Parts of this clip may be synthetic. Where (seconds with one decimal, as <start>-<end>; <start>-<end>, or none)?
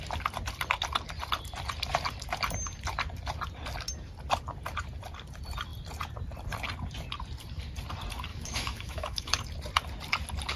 8.3-9.4